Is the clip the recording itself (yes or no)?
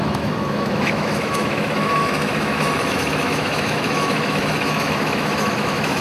no